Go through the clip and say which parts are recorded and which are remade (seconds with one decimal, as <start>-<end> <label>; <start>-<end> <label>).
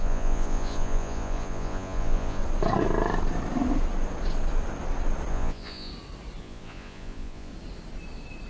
0.0-2.4 remade; 2.4-5.3 recorded; 5.3-5.9 remade; 5.9-6.4 recorded; 6.4-7.5 remade; 7.5-8.5 recorded